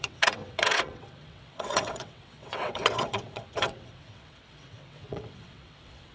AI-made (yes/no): yes